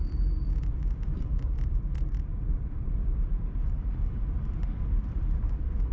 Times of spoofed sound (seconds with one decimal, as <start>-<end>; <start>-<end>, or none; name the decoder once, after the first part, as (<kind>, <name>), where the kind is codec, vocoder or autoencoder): 0.0-1.7 (vocoder, BigVGAN v2); 2.3-4.5